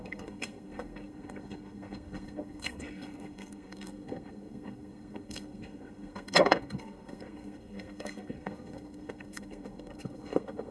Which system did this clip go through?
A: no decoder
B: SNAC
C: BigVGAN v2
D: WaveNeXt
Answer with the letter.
B